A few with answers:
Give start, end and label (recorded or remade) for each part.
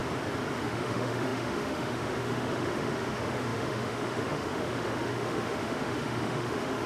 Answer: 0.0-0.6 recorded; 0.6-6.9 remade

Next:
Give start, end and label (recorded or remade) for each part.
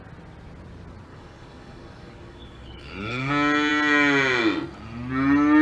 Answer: 0.0-1.1 recorded; 1.1-3.3 remade; 3.3-5.6 recorded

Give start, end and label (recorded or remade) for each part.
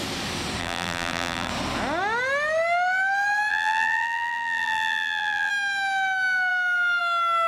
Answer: 0.0-0.6 recorded; 0.6-1.5 remade; 1.5-3.5 recorded; 3.5-5.5 remade; 5.5-7.5 recorded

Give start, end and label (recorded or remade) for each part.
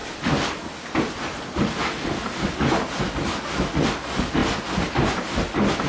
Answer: 0.0-5.9 recorded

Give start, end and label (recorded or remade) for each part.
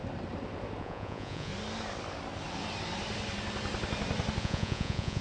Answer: 0.0-0.8 recorded; 0.8-1.5 remade; 1.5-4.4 recorded; 4.4-5.2 remade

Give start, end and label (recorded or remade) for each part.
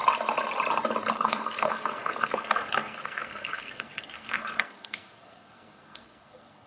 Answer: 0.0-1.1 recorded; 1.1-6.7 remade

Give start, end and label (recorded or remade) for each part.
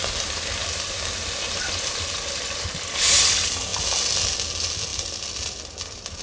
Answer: 0.0-0.6 recorded; 0.6-3.0 remade; 3.0-4.9 recorded; 4.9-6.2 remade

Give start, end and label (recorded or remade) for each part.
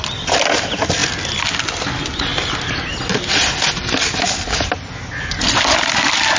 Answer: 0.0-6.4 recorded